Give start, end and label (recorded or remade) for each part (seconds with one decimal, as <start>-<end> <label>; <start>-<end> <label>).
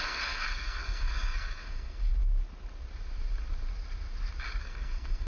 0.0-2.1 remade; 2.1-4.6 recorded; 4.6-5.3 remade